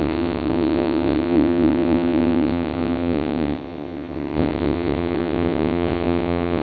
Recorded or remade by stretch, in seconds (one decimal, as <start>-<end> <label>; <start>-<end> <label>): 0.0-6.6 remade